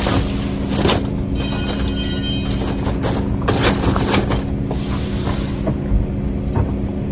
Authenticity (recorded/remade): recorded